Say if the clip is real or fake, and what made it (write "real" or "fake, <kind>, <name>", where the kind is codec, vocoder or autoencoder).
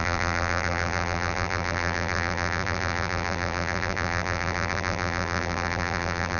fake, vocoder, BigVGAN v2